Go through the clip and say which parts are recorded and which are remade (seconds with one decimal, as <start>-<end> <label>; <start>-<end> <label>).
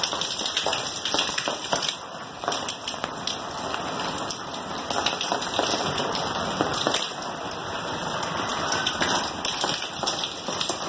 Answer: 0.0-10.9 recorded